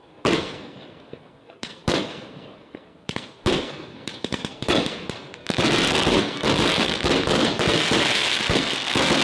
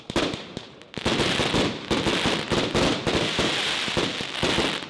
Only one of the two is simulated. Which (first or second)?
first